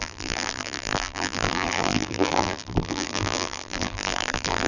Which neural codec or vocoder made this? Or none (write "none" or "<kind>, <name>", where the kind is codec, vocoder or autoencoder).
vocoder, BigVGAN v2